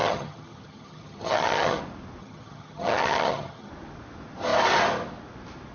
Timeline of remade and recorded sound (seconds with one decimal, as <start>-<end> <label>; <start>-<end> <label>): 0.0-1.8 remade; 1.8-2.2 recorded; 2.2-3.7 remade; 3.7-5.7 recorded